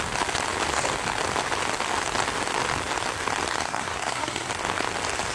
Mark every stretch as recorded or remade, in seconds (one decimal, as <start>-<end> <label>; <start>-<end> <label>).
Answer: 0.0-3.5 recorded; 3.5-4.5 remade; 4.5-5.3 recorded